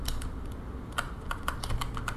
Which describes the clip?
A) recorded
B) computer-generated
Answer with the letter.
B